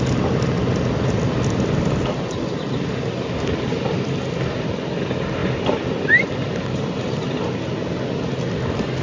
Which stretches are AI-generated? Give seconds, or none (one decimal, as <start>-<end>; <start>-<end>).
none